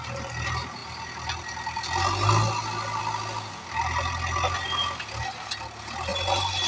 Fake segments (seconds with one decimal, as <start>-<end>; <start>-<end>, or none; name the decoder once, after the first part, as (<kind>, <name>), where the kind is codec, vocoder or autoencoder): none